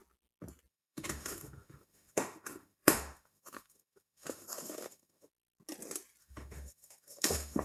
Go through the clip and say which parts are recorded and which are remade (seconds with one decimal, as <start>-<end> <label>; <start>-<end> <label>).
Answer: 0.0-0.7 recorded; 0.7-5.3 remade; 5.3-6.2 recorded; 6.2-7.6 remade